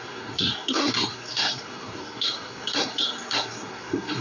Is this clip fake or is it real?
fake